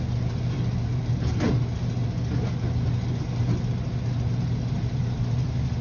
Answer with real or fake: real